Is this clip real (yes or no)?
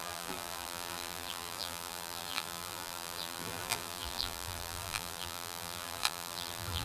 no